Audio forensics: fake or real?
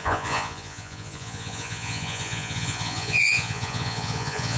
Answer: fake